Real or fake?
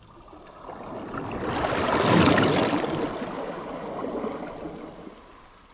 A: real